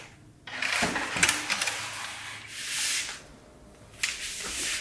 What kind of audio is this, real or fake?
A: real